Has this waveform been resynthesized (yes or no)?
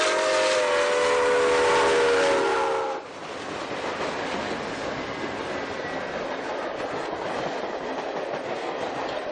no